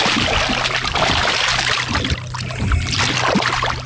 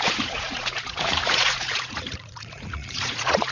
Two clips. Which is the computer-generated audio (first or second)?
second